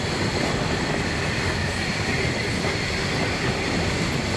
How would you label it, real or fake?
real